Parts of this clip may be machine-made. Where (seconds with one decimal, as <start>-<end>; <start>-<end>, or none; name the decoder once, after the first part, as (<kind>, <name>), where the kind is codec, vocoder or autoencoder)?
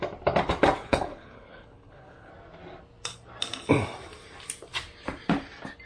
0.8-2.3 (codec, HILCodec)